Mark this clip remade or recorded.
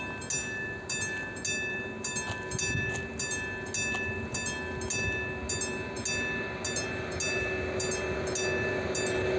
recorded